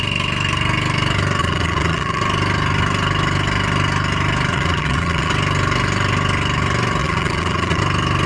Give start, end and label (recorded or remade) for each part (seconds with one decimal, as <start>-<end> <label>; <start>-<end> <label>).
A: 0.0-1.4 recorded; 1.4-2.2 remade; 2.2-4.5 recorded; 4.5-5.3 remade; 5.3-7.0 recorded; 7.0-7.8 remade; 7.8-8.3 recorded